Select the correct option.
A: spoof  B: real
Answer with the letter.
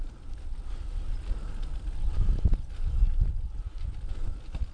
B